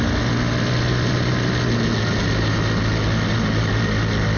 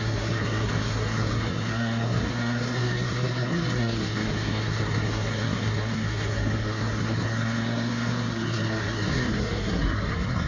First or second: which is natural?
first